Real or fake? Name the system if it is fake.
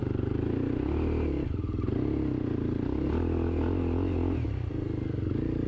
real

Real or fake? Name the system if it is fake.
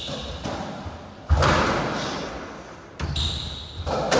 real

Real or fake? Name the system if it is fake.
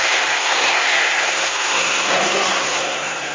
fake, codec, SNAC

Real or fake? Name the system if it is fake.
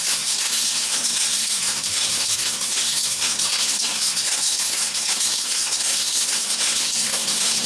fake, codec, SNAC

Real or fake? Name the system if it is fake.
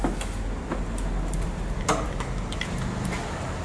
real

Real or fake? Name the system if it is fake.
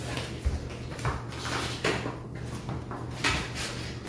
real